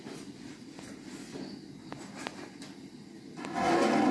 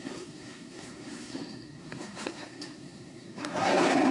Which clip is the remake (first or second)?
second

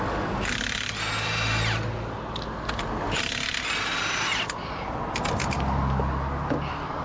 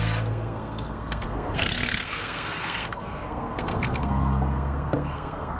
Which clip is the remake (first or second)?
second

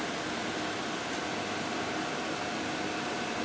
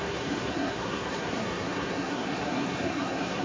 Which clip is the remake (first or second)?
second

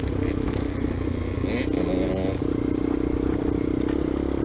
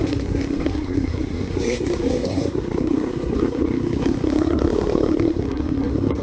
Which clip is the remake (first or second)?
second